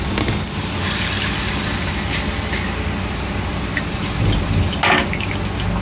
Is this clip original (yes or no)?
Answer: yes